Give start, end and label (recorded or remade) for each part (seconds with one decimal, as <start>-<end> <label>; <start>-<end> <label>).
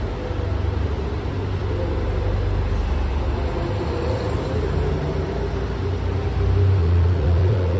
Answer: 0.0-6.8 recorded; 6.8-7.8 remade